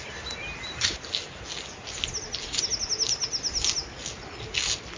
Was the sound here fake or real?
real